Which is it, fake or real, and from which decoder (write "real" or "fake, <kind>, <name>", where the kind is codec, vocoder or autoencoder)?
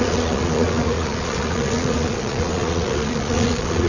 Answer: fake, vocoder, Vocos